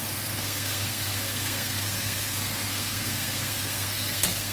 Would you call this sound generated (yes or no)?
yes